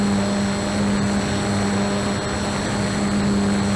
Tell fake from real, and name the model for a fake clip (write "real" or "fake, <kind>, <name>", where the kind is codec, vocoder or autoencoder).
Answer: real